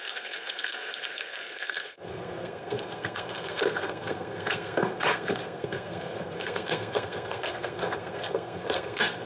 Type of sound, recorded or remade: remade